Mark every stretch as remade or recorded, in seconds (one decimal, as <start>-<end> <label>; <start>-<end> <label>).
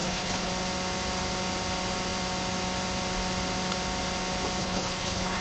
0.0-0.5 remade; 0.5-4.6 recorded; 4.6-5.4 remade